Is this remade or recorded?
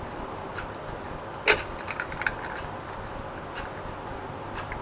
recorded